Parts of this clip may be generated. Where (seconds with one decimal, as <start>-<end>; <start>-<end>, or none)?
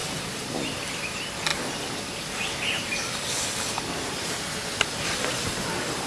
0.0-0.9